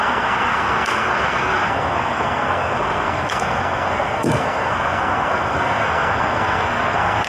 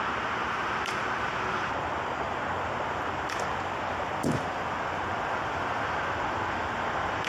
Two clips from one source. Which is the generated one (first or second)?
first